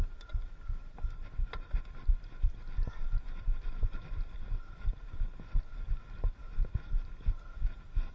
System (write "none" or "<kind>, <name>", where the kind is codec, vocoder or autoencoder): none